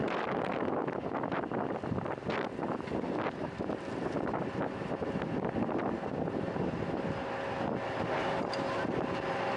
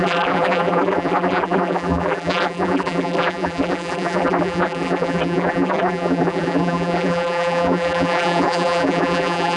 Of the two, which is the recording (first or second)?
first